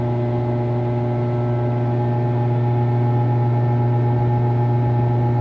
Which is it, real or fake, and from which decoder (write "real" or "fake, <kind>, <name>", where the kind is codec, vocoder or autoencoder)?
real